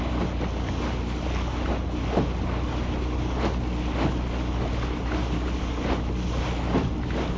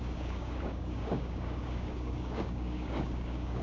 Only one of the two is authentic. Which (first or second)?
first